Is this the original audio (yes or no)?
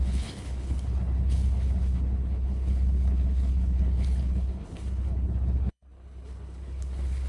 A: no